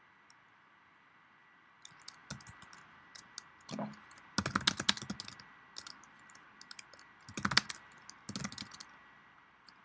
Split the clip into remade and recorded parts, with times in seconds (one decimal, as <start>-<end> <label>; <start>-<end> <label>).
0.0-9.8 recorded